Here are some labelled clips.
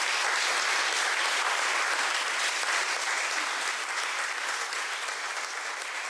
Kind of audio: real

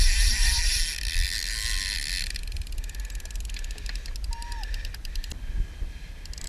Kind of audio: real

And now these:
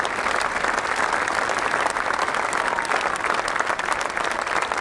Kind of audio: real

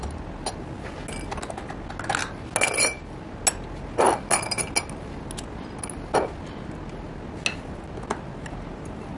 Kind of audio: real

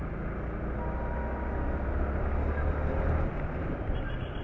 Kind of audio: real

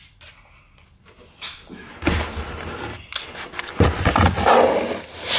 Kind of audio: real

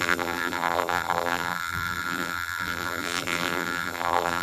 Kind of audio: fake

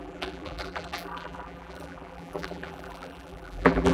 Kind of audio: fake